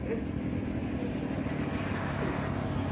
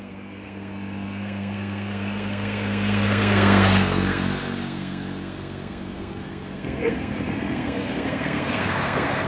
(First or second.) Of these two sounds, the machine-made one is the second